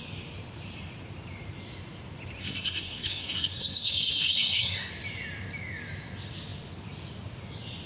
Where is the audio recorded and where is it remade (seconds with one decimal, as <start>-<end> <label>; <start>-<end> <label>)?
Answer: 0.0-2.4 recorded; 2.4-4.9 remade; 4.9-7.9 recorded